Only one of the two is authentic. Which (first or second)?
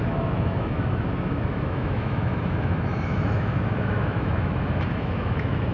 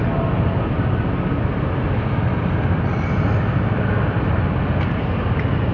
second